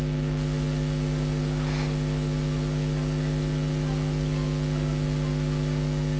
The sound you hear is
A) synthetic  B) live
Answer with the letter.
B